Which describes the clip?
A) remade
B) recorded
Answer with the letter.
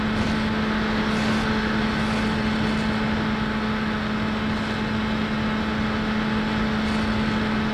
B